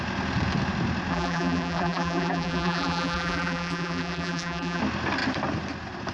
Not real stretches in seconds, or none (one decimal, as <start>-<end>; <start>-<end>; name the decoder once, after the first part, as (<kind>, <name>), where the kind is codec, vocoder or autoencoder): 1.1-4.8 (vocoder, BigVGAN v2)